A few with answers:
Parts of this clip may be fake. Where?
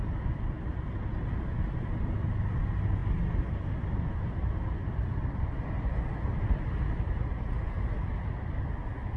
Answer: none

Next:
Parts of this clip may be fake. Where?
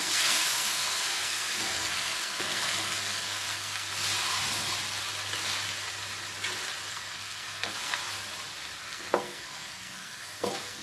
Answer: 0.0-3.9 (codec, SNAC); 6.9-8.0; 8.8-10.8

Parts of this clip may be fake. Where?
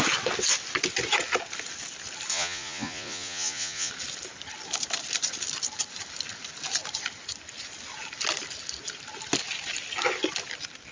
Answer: 2.3-3.9 (vocoder, Vocos)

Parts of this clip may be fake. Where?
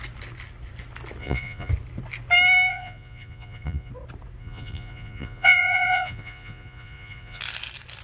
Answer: 1.2-1.7 (vocoder, Vocos); 2.7-3.9; 4.4-7.4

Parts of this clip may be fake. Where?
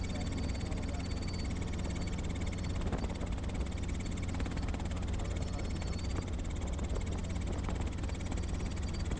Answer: none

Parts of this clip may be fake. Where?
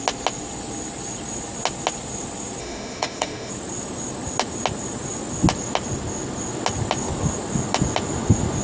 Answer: 2.6-3.5 (autoencoder, DAC-VAE)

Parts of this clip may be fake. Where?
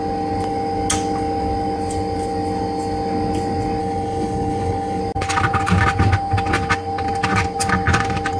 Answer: 3.8-5.0 (codec, HILCodec)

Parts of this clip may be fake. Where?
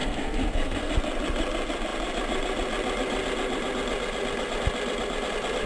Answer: 0.0-0.9 (codec, SNAC)